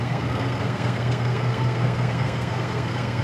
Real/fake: fake